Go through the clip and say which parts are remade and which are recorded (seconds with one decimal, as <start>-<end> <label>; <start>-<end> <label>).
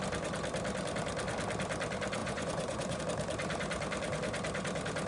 0.0-2.2 recorded; 2.2-3.0 remade; 3.0-5.1 recorded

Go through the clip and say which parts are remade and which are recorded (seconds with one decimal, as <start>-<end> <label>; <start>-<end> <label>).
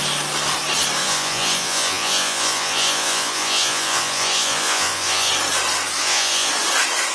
0.0-1.0 recorded; 1.0-5.3 remade; 5.3-6.0 recorded; 6.0-6.5 remade; 6.5-7.1 recorded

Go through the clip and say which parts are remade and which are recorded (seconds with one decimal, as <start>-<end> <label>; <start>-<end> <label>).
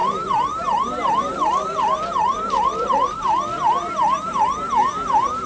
0.0-5.5 recorded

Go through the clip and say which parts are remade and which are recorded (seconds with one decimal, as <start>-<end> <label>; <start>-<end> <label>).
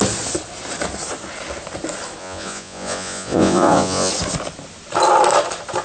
0.0-2.2 recorded; 2.2-4.1 remade; 4.1-5.8 recorded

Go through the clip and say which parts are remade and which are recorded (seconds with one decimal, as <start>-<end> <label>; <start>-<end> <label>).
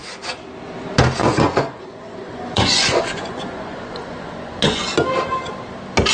0.0-1.2 recorded; 1.2-4.9 remade; 4.9-6.1 recorded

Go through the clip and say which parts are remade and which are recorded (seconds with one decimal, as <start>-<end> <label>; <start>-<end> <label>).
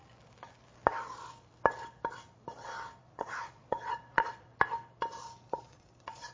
0.0-3.0 recorded; 3.0-4.5 remade; 4.5-5.5 recorded; 5.5-6.3 remade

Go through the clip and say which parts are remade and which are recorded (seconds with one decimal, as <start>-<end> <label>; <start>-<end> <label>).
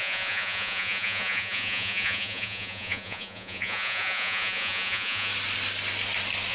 0.0-5.3 remade; 5.3-6.5 recorded